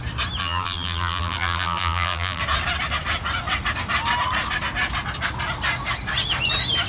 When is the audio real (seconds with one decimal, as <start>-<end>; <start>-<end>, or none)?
0.0-0.4; 2.4-6.9